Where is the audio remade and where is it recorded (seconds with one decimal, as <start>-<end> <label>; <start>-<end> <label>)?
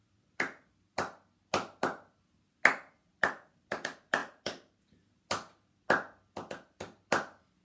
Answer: 0.0-7.6 recorded